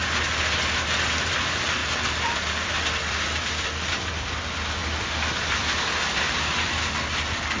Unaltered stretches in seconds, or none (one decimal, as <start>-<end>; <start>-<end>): 0.0-1.8; 4.1-4.8; 6.8-7.6

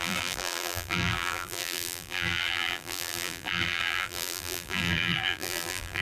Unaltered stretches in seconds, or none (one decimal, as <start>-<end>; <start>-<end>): none

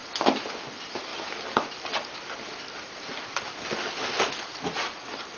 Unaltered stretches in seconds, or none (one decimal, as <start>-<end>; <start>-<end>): 0.0-5.4

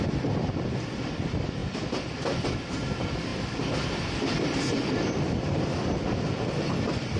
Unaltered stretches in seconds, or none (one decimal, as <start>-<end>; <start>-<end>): 0.0-7.2

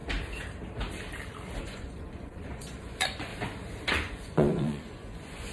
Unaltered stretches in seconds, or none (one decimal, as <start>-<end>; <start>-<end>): 0.0-1.6; 3.3-3.9

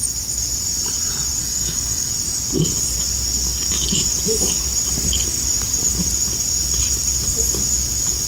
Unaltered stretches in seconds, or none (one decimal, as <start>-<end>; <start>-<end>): 0.0-1.4; 2.1-8.3